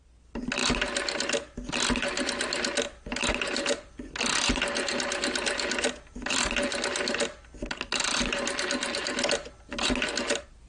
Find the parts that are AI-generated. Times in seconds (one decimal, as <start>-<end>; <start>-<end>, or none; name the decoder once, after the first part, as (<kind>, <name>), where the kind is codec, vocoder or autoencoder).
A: none